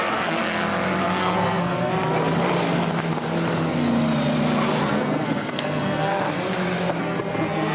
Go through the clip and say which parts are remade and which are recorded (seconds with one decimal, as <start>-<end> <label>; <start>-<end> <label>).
0.0-0.4 remade; 0.4-1.2 recorded; 1.2-1.9 remade; 1.9-4.8 recorded; 4.8-6.1 remade; 6.1-7.0 recorded; 7.0-7.7 remade